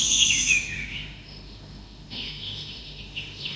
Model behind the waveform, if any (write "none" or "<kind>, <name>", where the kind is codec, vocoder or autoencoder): autoencoder, DAC-VAE